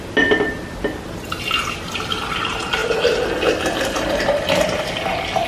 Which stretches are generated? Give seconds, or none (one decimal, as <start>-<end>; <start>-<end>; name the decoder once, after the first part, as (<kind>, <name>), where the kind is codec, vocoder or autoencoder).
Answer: none